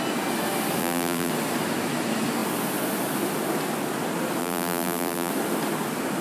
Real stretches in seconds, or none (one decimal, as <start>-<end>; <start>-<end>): 0.0-0.8; 1.3-4.4; 5.3-6.2